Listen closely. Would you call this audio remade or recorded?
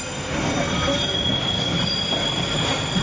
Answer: recorded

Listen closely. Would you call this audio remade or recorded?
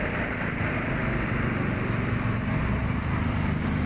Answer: recorded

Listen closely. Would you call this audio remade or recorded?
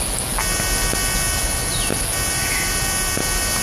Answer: recorded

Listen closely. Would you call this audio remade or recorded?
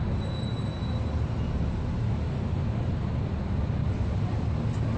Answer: recorded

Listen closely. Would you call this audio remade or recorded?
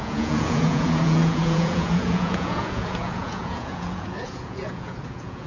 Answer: remade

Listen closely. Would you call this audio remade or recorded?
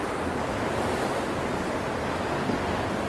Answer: recorded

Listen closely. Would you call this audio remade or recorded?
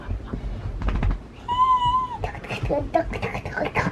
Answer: recorded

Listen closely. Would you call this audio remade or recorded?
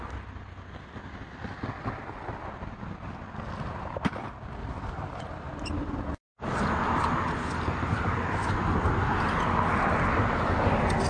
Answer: recorded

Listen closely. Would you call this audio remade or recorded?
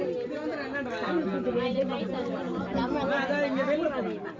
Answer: recorded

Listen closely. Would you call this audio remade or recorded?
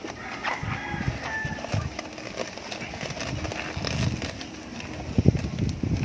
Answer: recorded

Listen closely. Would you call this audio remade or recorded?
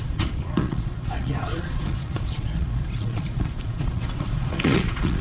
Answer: remade